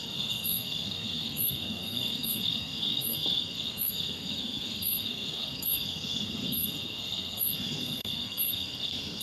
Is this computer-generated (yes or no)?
yes